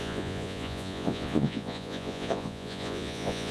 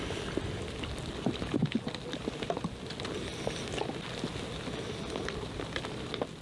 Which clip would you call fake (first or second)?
first